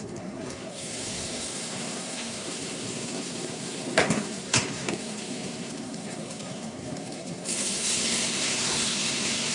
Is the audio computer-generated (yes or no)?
yes